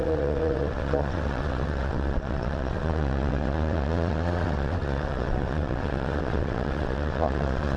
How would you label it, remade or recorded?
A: remade